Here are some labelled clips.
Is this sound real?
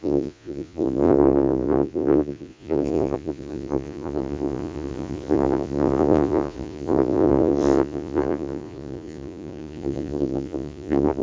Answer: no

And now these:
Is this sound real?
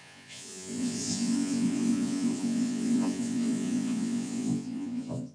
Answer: no